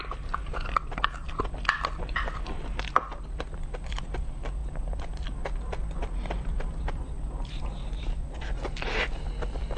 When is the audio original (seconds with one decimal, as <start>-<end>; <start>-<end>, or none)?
0.0-9.8